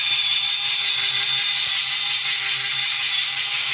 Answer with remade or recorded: recorded